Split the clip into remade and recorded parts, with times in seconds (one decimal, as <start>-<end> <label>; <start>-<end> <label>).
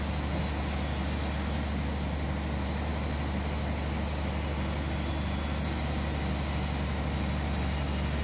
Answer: 0.0-8.2 recorded